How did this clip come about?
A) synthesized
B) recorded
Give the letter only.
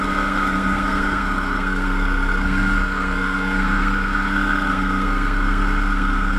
A